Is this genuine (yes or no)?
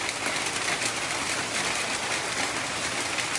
yes